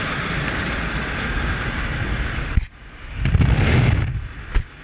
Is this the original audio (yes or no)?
yes